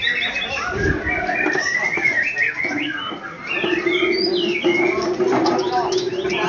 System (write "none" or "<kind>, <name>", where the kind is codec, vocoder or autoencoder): none